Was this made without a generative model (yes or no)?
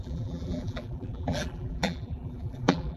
no